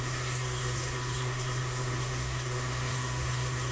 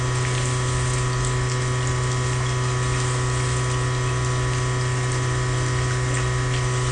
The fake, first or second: first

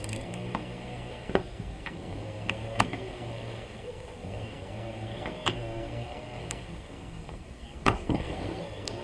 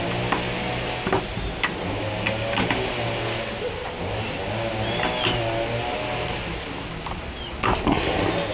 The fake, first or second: first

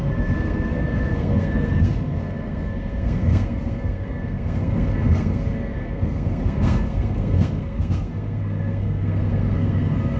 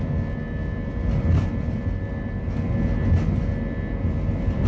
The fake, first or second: first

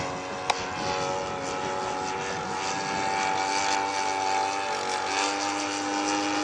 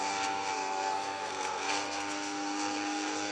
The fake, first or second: second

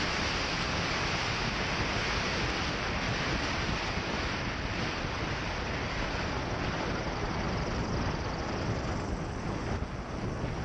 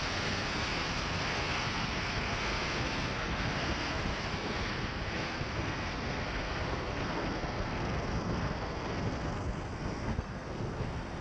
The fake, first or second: second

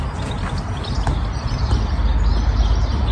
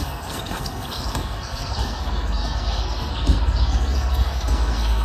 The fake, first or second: second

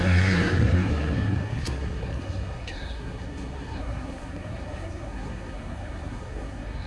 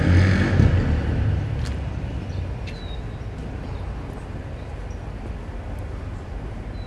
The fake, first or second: first